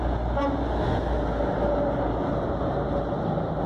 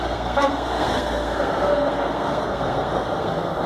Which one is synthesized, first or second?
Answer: second